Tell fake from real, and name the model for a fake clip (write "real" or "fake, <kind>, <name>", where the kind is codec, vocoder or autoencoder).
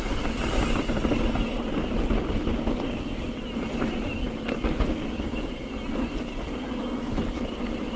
real